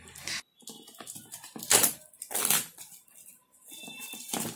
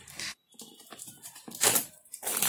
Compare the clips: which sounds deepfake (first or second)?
second